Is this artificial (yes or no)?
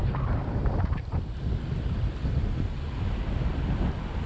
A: no